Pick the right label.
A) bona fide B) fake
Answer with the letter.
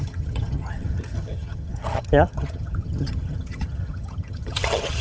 B